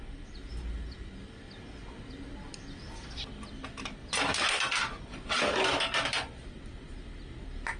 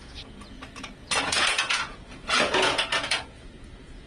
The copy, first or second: second